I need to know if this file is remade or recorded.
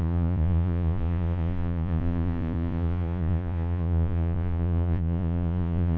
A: remade